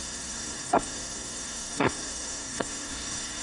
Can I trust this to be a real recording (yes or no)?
no